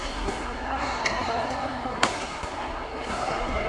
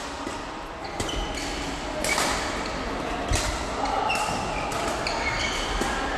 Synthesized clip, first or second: first